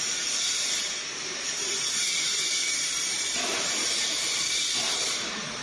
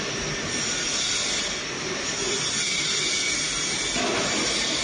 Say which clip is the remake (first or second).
first